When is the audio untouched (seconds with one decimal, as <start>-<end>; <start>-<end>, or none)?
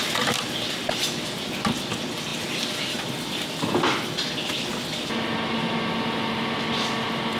0.0-7.4